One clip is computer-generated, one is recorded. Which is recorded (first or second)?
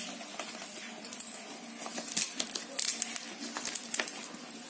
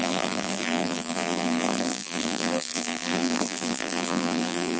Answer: first